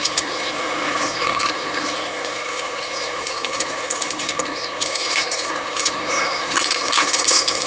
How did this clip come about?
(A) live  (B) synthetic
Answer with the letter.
B